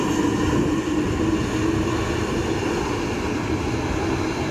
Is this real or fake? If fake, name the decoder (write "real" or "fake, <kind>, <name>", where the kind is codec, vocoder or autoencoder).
real